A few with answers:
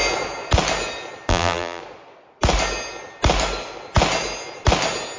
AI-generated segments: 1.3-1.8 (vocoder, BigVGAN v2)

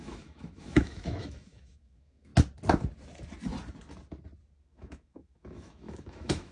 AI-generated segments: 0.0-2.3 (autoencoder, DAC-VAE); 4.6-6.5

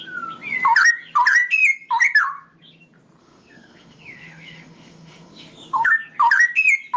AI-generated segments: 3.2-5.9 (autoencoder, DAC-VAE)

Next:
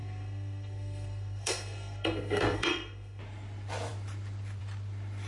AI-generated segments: 0.0-3.2 (codec, SNAC)